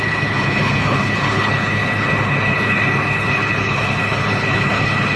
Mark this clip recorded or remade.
remade